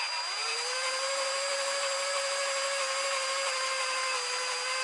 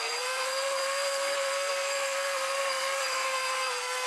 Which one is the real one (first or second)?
first